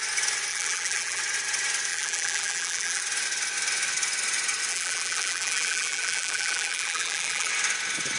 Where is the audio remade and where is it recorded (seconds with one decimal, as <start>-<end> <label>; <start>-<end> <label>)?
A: 0.0-0.5 recorded; 0.5-1.2 remade; 1.2-1.9 recorded; 1.9-3.0 remade; 3.0-4.7 recorded; 4.7-7.5 remade; 7.5-8.2 recorded